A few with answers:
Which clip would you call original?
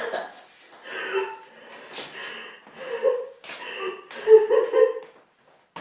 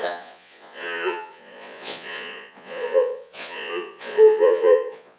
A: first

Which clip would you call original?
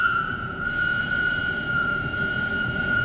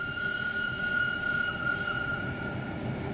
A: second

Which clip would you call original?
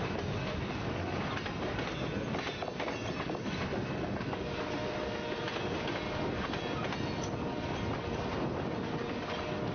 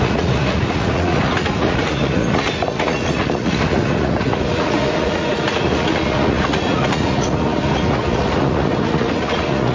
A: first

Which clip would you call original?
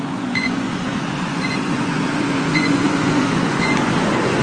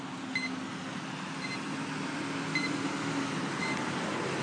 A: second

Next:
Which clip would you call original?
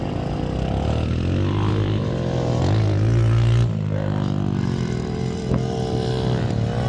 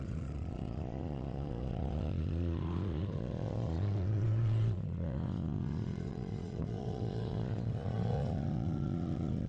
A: first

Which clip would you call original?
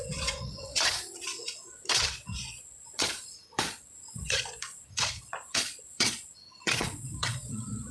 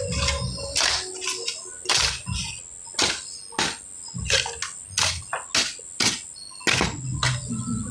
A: second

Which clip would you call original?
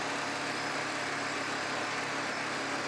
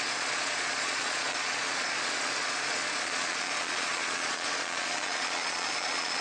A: first